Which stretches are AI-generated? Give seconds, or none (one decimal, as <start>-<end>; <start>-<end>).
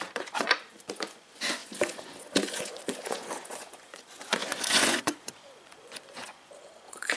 0.0-7.2